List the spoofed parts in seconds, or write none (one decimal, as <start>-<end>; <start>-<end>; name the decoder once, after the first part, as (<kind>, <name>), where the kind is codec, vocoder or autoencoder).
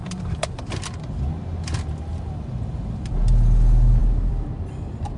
0.0-1.4 (vocoder, BigVGAN v2); 2.1-3.1; 4.0-5.2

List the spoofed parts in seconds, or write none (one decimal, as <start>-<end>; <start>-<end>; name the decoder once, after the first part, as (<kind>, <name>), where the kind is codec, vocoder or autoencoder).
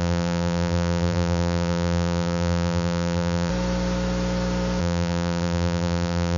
0.0-3.5 (vocoder, BigVGAN v2); 4.8-6.4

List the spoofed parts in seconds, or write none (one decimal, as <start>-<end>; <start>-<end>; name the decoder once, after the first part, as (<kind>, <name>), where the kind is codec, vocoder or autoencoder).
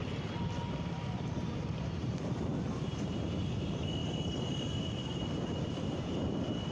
1.6-2.5 (vocoder, BigVGAN v2); 3.1-4.0; 5.6-6.7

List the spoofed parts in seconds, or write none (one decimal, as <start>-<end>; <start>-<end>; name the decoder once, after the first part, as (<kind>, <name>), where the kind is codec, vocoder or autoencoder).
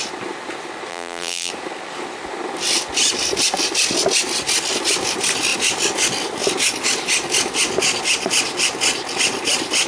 0.9-1.5 (vocoder, BigVGAN v2)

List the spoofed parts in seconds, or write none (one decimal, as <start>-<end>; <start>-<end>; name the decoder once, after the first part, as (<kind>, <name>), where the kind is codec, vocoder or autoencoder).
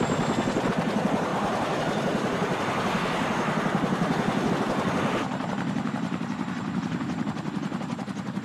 none